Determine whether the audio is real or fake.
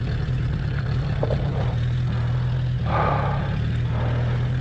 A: real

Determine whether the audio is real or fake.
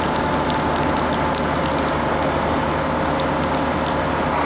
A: real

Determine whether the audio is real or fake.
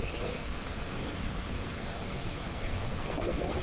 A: fake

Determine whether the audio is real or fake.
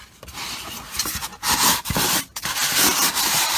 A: fake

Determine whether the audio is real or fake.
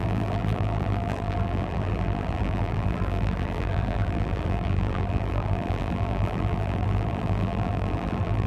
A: fake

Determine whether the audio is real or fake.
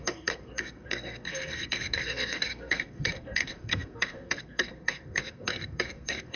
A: fake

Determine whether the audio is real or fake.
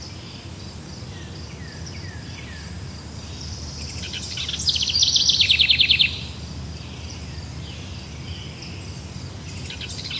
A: real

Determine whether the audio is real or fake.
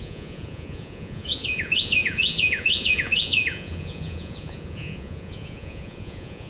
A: fake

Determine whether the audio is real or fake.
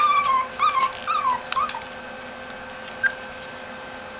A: real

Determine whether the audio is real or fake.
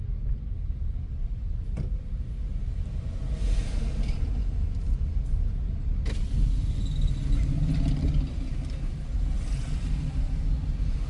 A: real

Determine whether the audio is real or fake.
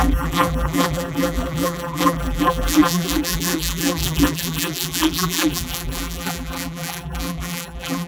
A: fake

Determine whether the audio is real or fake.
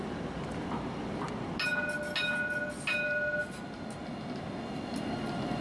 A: real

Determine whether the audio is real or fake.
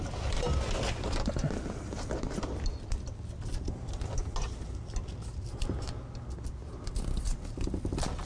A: real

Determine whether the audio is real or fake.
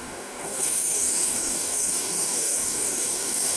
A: fake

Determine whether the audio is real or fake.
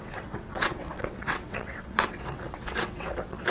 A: fake